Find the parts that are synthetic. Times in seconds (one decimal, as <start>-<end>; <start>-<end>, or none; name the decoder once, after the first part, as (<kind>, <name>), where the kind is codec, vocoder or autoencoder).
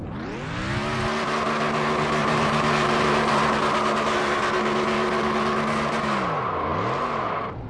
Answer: 2.2-3.6 (vocoder, BigVGAN v2)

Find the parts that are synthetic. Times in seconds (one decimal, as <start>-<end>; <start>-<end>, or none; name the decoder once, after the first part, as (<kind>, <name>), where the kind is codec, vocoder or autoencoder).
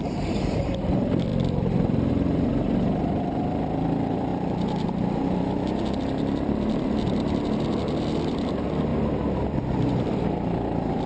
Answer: 0.0-8.9 (vocoder, BigVGAN v2); 9.4-11.1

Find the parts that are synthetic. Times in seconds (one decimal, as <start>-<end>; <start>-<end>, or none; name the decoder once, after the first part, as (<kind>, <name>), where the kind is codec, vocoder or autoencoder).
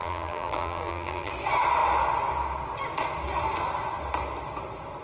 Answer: 0.0-1.3 (vocoder, BigVGAN v2)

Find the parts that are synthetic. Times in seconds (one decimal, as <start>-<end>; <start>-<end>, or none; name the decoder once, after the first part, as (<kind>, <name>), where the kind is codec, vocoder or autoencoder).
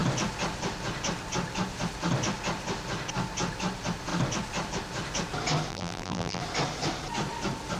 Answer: 5.7-6.4 (vocoder, BigVGAN v2)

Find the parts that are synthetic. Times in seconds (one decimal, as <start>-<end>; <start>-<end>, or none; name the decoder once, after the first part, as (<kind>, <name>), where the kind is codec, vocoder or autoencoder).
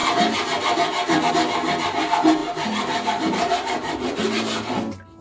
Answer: 2.4-4.4 (vocoder, BigVGAN v2)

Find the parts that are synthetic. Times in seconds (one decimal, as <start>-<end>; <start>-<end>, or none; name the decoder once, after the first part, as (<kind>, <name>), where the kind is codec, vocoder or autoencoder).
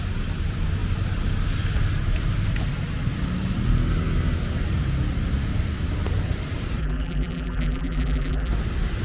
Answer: 6.8-8.5 (vocoder, BigVGAN v2)